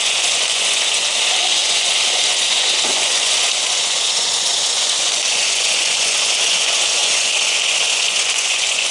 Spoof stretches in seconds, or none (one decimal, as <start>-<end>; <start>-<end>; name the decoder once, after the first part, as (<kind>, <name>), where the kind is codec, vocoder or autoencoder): 0.0-8.9 (vocoder, Vocos)